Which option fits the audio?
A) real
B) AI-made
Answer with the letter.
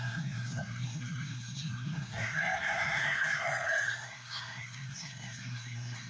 B